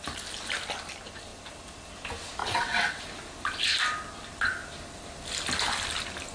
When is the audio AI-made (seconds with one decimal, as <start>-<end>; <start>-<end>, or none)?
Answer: 2.4-3.0